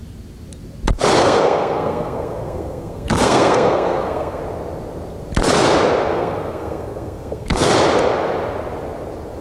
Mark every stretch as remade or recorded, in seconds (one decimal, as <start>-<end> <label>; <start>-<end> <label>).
0.0-1.2 recorded; 1.2-4.4 remade; 4.4-6.1 recorded; 6.1-7.7 remade; 7.7-9.4 recorded